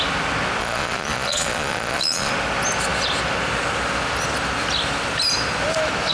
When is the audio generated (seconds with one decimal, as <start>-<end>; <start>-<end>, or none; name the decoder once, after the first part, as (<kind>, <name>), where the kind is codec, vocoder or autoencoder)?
0.6-2.3 (vocoder, Vocos)